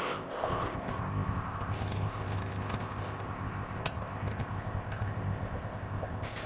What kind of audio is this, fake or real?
fake